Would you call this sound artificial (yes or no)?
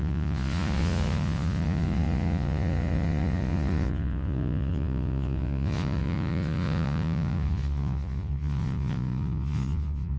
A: yes